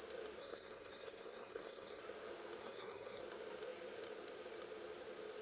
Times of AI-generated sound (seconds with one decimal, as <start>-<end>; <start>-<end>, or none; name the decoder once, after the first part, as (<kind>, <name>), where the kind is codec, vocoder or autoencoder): 0.4-2.0 (codec, SNAC); 2.6-3.2